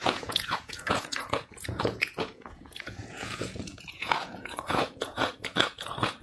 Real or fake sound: fake